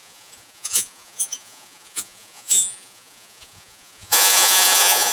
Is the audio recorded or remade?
remade